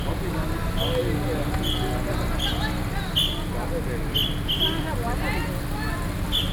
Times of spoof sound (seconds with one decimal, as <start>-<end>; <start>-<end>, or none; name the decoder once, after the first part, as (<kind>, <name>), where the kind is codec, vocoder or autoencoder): none